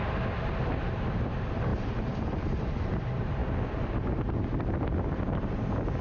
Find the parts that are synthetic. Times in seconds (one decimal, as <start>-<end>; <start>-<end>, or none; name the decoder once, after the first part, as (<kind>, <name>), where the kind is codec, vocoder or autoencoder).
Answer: none